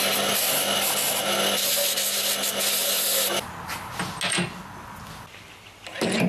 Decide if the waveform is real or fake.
real